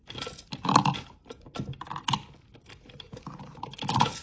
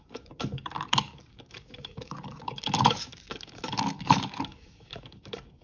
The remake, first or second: second